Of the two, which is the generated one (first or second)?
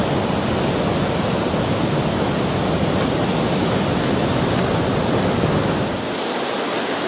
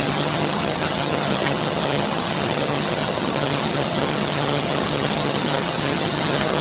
second